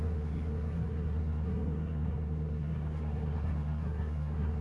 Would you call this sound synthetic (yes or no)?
yes